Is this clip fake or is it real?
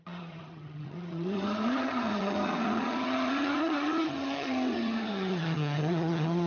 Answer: fake